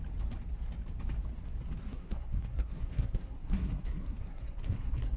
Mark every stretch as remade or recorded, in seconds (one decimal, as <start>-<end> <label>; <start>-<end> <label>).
0.0-1.8 recorded; 1.8-5.2 remade